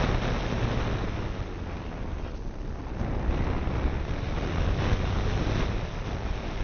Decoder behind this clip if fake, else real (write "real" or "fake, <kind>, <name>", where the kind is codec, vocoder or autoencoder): real